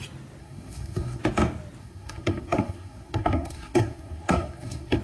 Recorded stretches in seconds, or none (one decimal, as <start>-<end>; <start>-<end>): 0.0-0.4; 1.2-1.8